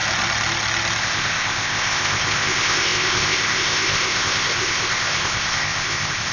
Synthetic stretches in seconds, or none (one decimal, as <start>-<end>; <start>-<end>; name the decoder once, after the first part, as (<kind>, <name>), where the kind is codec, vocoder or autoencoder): 1.0-6.3 (codec, ZipCodec)